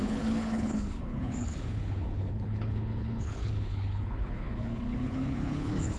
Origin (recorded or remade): remade